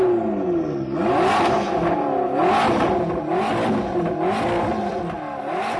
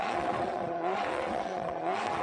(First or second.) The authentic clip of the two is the first